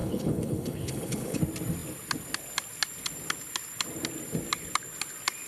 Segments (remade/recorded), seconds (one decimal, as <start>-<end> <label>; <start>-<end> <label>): 0.0-1.4 remade; 1.4-5.5 recorded